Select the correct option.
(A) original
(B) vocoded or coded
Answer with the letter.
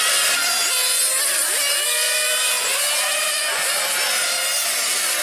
A